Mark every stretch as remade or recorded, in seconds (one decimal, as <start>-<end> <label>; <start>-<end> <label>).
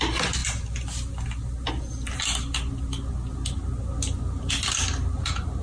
0.0-5.6 recorded